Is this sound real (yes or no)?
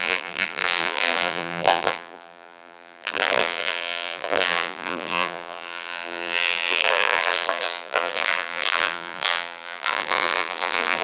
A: no